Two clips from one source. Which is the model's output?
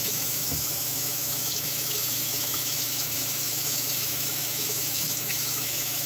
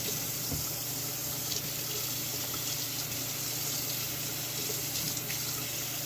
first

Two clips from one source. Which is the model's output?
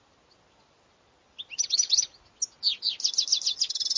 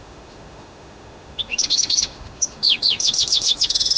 second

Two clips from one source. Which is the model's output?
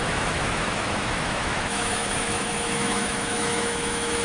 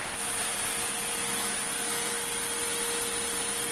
first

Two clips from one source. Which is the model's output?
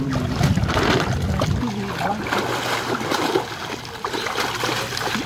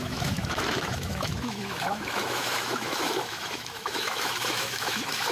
second